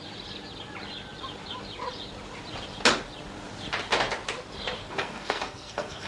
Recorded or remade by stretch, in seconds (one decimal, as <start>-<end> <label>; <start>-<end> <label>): 0.0-4.8 recorded; 4.8-6.1 remade